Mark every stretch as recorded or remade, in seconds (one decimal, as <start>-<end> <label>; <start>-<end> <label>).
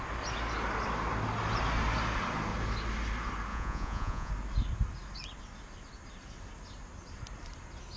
0.0-3.5 recorded; 3.5-4.3 remade; 4.3-8.0 recorded